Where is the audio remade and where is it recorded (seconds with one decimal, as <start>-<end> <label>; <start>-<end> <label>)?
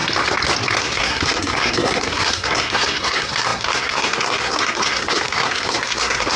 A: 0.0-0.8 recorded; 0.8-6.4 remade